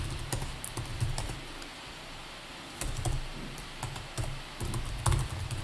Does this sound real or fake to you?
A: real